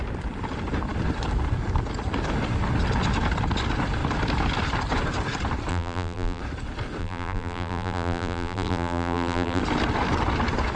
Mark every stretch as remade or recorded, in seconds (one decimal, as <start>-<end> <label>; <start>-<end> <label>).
0.0-5.7 recorded; 5.7-6.4 remade; 6.4-7.0 recorded; 7.0-9.6 remade; 9.6-10.8 recorded

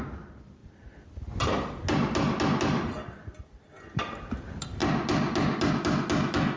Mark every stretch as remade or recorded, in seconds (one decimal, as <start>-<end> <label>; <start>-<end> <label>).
0.0-6.6 recorded

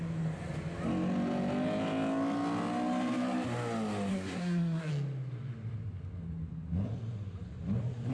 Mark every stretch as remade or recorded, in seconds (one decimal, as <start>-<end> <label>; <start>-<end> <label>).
0.0-4.1 recorded; 4.1-4.9 remade; 4.9-8.1 recorded

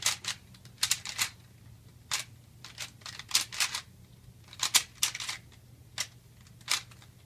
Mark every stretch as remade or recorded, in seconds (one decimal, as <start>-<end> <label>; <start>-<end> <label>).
0.0-7.3 recorded

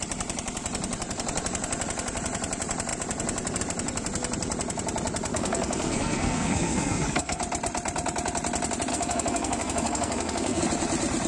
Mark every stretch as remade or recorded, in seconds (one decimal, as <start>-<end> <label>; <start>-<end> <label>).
0.0-5.3 recorded; 5.3-7.4 remade; 7.4-8.9 recorded; 8.9-10.6 remade; 10.6-11.3 recorded

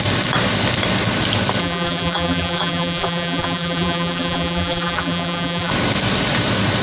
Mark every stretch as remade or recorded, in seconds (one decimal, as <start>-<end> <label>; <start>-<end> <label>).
0.0-1.6 recorded; 1.6-5.7 remade; 5.7-6.8 recorded